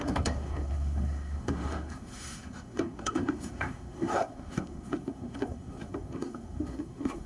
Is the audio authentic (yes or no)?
no